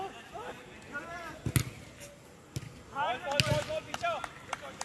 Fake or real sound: real